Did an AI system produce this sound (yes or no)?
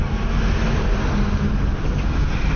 no